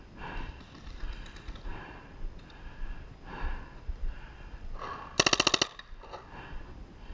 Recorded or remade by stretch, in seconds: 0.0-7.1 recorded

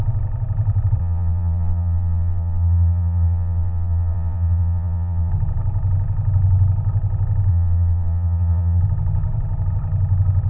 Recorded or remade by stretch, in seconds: 0.0-1.0 recorded; 1.0-5.3 remade; 5.3-7.5 recorded; 7.5-8.8 remade; 8.8-10.5 recorded

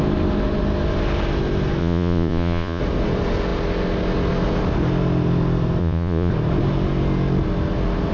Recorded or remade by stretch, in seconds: 0.0-1.8 recorded; 1.8-2.8 remade; 2.8-5.8 recorded; 5.8-6.3 remade; 6.3-8.1 recorded

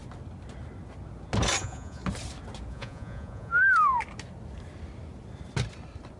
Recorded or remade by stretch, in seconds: 0.0-1.6 recorded; 1.6-2.0 remade; 2.0-2.7 recorded; 2.7-3.5 remade; 3.5-6.2 recorded

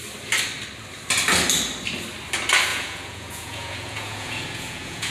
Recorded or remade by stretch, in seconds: 0.0-2.7 recorded; 2.7-5.1 remade